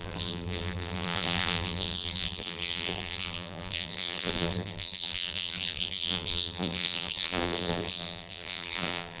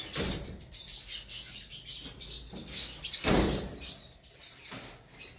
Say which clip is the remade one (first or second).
first